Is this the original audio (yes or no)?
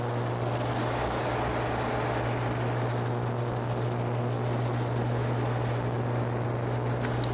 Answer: yes